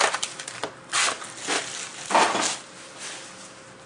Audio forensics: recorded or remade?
recorded